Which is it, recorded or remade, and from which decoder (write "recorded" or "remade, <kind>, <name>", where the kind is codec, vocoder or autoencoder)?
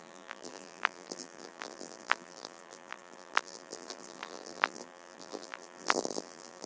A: remade, vocoder, BigVGAN v2